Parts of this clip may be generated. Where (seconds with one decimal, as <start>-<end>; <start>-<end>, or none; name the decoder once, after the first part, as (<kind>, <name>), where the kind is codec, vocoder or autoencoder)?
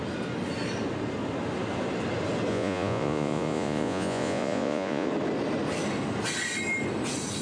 2.5-5.1 (vocoder, Vocos)